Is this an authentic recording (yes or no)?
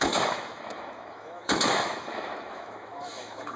no